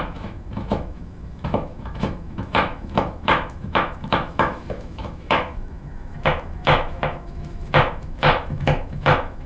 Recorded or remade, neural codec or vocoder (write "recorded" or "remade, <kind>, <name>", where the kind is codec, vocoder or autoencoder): remade, autoencoder, DAC-VAE